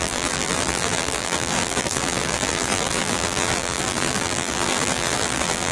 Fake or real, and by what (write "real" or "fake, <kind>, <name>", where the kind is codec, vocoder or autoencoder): fake, vocoder, BigVGAN v2